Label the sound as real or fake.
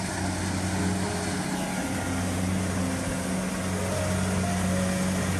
real